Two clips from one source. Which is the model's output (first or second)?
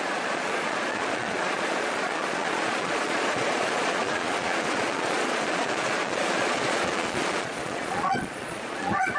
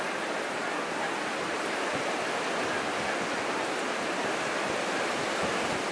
first